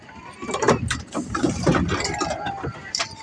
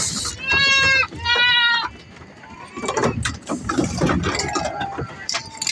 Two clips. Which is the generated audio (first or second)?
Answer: first